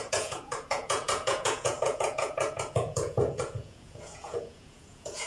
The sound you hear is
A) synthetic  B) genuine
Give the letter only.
A